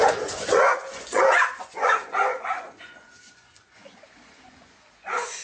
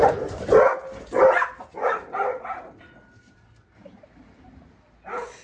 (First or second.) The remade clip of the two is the first